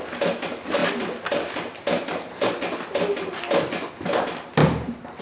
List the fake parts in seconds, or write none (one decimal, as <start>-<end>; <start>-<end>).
4.6-5.2